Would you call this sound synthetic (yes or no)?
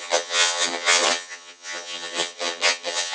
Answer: yes